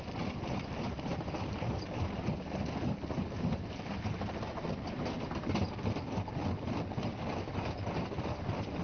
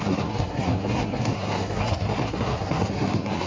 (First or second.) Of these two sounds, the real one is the first